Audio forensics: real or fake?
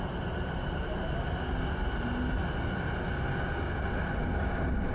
real